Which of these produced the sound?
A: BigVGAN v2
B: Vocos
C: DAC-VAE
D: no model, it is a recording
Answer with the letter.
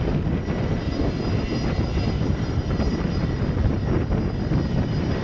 D